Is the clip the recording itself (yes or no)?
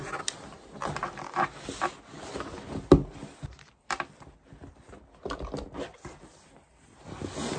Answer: yes